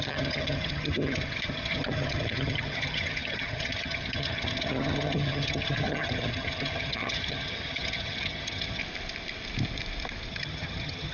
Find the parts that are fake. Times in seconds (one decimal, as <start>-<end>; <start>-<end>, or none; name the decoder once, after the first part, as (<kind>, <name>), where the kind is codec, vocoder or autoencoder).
0.0-8.8 (vocoder, HiFi-GAN); 10.3-11.1